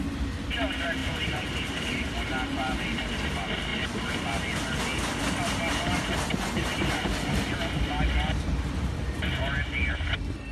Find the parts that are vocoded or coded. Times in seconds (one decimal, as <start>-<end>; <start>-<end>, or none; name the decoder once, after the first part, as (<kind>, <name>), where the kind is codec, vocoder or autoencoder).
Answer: 1.0-3.0 (vocoder, BigVGAN v2); 6.7-7.5